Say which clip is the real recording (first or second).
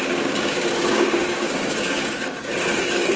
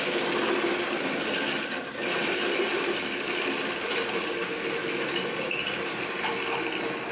second